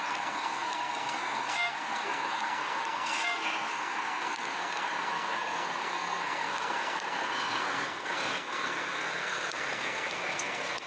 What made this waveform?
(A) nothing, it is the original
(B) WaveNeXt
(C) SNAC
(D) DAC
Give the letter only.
C